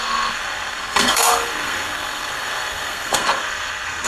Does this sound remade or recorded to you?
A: remade